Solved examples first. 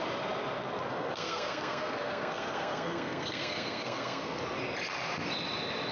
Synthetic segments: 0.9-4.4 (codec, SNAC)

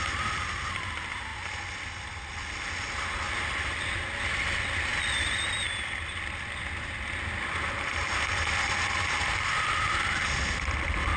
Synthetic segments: none

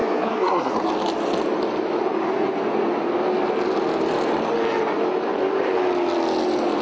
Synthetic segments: 0.0-0.7 (codec, SNAC)

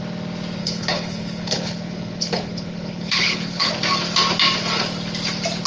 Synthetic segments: 0.6-3.7 (codec, HILCodec)

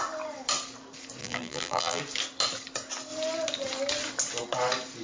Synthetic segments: 1.2-2.0 (vocoder, BigVGAN v2)